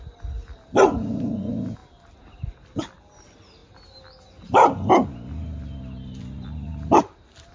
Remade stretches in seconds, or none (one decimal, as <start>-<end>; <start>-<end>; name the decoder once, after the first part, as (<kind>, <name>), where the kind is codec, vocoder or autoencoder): none